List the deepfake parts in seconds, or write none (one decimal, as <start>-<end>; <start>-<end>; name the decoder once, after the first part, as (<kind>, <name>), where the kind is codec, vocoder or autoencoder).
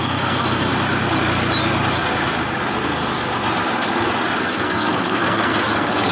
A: 0.0-0.7 (codec, SNAC); 4.4-6.1